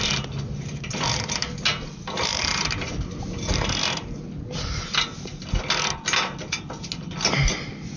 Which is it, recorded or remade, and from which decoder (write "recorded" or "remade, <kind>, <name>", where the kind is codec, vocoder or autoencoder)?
recorded